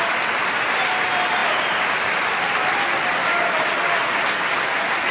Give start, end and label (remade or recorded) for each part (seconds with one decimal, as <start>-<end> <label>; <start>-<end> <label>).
0.0-5.1 recorded